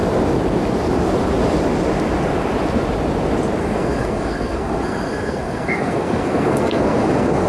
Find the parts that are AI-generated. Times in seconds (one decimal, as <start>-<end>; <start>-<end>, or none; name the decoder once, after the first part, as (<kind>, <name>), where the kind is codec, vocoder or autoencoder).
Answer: 3.6-7.5 (codec, SNAC)